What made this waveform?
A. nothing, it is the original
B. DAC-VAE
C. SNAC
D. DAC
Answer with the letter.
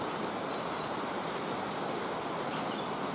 A